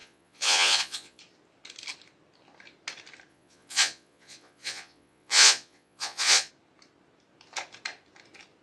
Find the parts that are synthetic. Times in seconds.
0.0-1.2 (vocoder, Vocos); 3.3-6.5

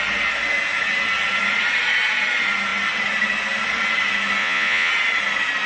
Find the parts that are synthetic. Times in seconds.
4.4-4.9 (vocoder, Vocos)

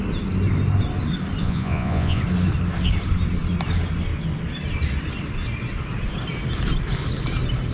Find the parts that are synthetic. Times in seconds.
1.4-2.2 (vocoder, Vocos)

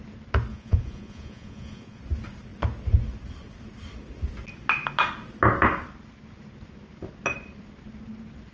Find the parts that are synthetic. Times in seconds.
0.5-2.0 (vocoder, Vocos)

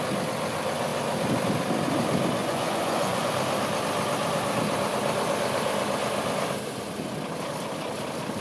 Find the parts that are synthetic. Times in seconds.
2.4-3.3 (vocoder, Vocos)